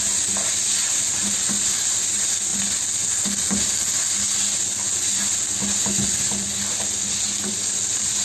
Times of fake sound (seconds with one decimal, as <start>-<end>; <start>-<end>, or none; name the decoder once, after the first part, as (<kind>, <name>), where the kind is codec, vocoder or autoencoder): none